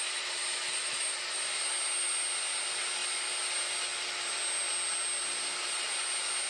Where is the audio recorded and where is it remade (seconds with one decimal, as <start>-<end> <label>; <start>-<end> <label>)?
0.0-6.5 recorded